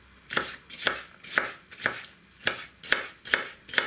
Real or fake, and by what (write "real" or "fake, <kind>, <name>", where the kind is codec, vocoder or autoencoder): real